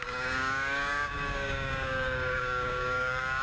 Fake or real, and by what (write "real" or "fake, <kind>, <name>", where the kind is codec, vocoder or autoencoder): fake, codec, DAC